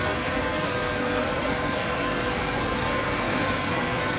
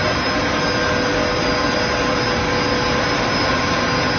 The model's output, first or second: first